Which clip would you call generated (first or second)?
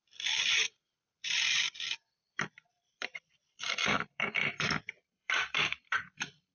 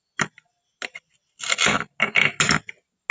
first